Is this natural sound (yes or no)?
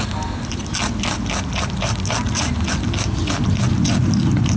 yes